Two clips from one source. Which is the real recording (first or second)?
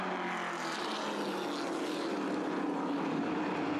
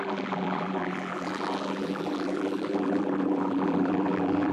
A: first